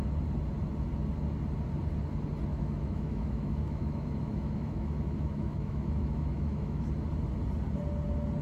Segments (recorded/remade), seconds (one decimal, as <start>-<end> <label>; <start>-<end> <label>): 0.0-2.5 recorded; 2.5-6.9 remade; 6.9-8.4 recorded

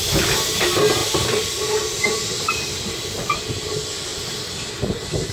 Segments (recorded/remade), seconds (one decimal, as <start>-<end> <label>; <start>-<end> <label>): 0.0-1.0 recorded; 1.0-3.4 remade; 3.4-5.3 recorded

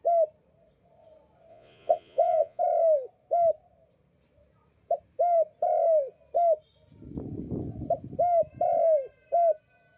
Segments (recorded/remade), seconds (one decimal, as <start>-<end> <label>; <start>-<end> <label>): 0.0-1.5 recorded; 1.5-2.6 remade; 2.6-10.0 recorded